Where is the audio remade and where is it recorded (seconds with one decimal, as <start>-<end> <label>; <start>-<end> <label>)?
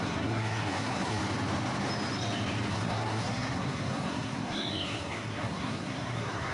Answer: 0.0-1.2 remade; 1.2-2.7 recorded; 2.7-6.5 remade